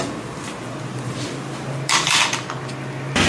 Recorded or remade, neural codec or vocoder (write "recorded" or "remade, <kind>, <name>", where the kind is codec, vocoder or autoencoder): remade, vocoder, BigVGAN v2